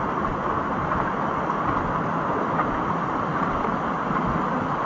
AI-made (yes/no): no